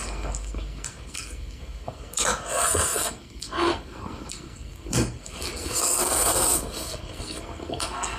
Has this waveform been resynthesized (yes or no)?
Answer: yes